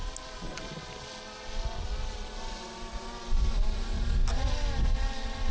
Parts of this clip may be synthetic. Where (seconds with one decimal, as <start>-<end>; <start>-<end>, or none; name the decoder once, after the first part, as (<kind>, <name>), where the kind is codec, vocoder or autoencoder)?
none